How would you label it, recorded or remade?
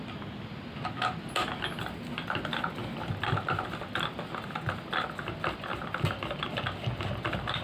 recorded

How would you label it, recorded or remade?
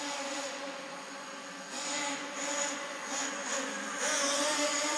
remade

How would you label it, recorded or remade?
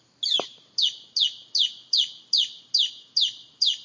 recorded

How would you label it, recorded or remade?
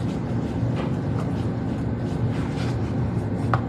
recorded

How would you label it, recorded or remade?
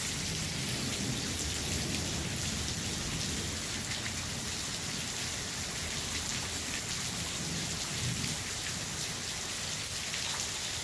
recorded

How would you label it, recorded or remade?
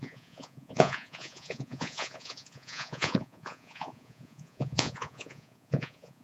remade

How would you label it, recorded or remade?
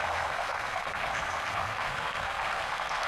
remade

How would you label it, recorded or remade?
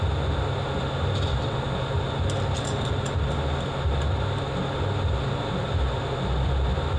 recorded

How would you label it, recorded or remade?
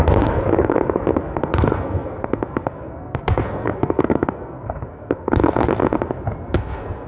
remade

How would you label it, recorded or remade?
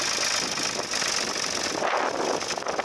recorded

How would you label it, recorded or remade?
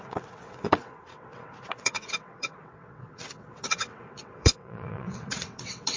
remade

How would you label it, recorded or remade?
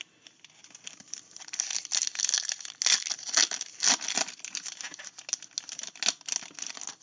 recorded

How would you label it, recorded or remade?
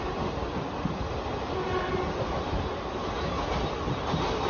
recorded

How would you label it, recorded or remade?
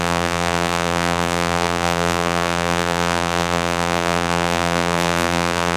remade